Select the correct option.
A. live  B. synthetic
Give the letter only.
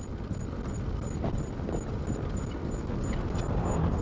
A